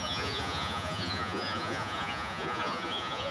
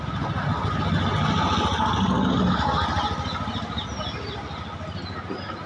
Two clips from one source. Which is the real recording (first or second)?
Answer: second